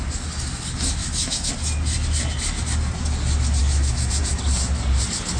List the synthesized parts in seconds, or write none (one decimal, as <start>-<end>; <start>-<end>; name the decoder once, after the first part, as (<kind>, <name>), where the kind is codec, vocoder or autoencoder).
1.0-1.5 (autoencoder, DAC-VAE); 3.6-4.2